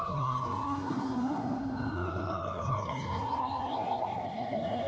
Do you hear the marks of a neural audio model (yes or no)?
yes